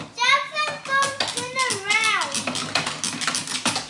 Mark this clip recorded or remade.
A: recorded